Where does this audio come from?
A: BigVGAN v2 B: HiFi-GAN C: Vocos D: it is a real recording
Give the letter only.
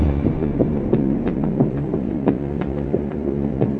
C